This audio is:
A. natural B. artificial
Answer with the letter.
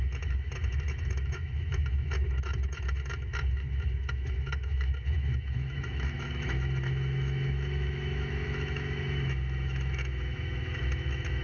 B